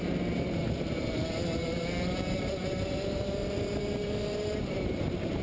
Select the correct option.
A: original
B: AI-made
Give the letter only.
B